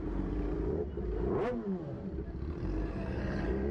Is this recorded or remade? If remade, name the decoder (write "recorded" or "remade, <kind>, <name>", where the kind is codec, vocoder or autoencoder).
remade, vocoder, BigVGAN v2